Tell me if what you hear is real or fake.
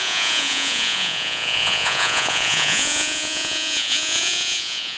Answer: fake